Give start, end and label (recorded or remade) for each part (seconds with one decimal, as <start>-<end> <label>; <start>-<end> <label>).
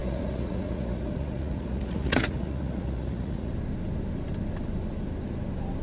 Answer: 0.0-3.5 remade; 3.5-5.8 recorded